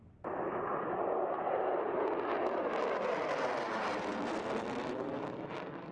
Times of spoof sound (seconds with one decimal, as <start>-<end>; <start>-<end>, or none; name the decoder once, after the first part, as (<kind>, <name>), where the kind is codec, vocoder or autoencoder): none

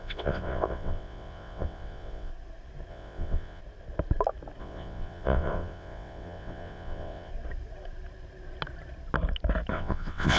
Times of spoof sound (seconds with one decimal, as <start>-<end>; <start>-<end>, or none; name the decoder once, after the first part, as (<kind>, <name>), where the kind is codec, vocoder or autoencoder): 0.0-2.3 (vocoder, WaveNeXt); 2.9-3.6; 4.6-7.3; 9.7-10.4

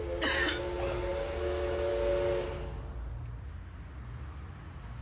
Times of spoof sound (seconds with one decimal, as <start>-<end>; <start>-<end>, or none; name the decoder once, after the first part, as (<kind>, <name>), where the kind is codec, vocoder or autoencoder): none

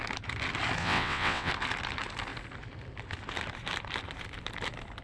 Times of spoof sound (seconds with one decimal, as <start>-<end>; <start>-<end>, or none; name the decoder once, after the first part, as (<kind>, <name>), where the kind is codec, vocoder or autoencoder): 0.8-1.5 (vocoder, WaveNeXt)

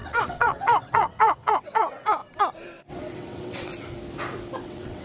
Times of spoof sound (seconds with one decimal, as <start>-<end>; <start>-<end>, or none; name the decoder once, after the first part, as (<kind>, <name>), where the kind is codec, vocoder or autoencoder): 0.0-2.2 (vocoder, WaveNeXt); 2.9-3.7; 4.6-5.0

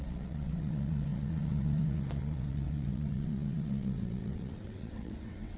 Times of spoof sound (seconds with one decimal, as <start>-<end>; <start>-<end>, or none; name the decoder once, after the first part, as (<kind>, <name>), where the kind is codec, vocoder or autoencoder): 0.0-5.6 (vocoder, WaveNeXt)